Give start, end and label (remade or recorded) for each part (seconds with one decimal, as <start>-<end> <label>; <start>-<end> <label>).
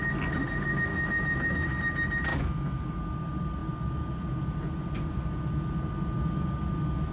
0.0-0.9 recorded; 0.9-1.8 remade; 1.8-2.3 recorded; 2.3-3.0 remade; 3.0-7.1 recorded